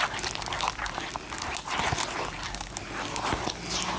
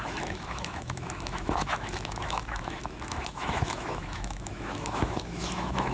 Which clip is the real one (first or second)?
first